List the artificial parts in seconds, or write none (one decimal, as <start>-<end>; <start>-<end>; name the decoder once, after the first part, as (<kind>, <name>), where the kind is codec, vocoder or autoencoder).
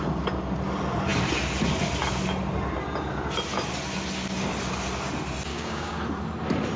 5.5-6.0 (codec, DAC)